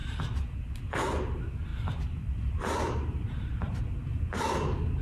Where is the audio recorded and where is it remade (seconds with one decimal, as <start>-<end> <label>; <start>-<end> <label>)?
0.0-1.7 recorded; 1.7-3.8 remade; 3.8-5.0 recorded